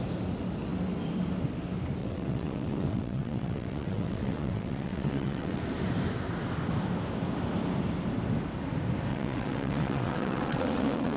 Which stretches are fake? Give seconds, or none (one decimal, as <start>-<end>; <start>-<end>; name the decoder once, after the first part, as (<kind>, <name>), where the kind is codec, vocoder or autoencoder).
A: 2.0-5.6 (vocoder, WaveNeXt); 9.1-11.2